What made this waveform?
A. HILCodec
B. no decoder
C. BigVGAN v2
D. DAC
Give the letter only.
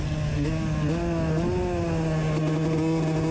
B